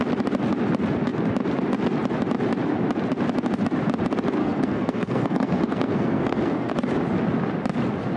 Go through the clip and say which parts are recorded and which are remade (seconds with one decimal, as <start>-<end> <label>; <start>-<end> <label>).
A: 0.0-4.4 recorded; 4.4-6.7 remade; 6.7-8.2 recorded